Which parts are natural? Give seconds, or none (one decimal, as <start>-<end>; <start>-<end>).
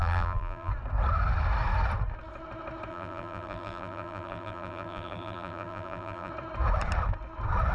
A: 0.7-2.9; 6.3-7.7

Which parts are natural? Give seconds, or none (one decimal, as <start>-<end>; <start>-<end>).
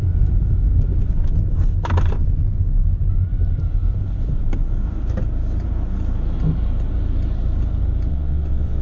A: 0.0-8.1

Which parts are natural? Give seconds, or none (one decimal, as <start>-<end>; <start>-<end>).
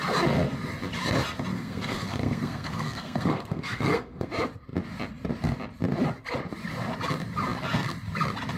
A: 0.0-1.5; 4.3-8.6